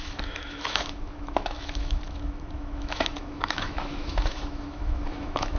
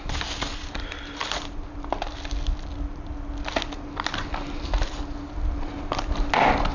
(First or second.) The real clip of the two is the second